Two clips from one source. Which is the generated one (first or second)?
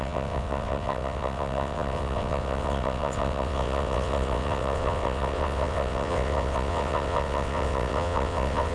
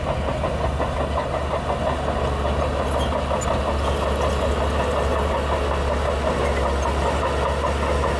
first